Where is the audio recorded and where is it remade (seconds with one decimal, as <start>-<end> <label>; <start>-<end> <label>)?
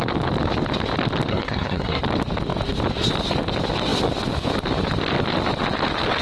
0.0-1.3 recorded; 1.3-2.0 remade; 2.0-6.2 recorded